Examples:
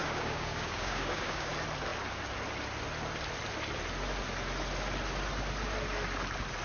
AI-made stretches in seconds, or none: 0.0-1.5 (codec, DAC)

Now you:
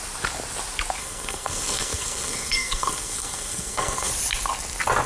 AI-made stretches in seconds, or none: 1.0-4.1 (codec, SNAC)

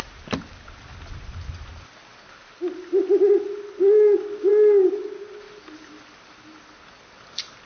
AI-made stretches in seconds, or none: none

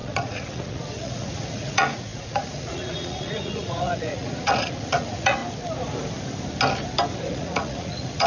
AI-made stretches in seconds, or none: 0.0-5.4 (vocoder, Vocos); 7.3-8.3

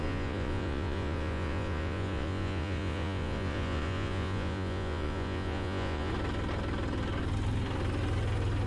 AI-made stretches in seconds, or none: 0.0-6.1 (vocoder, Vocos)

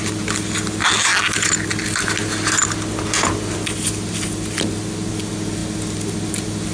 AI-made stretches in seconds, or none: none

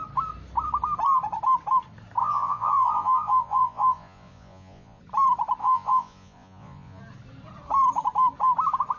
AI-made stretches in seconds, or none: 2.2-5.0 (vocoder, Vocos); 5.6-7.0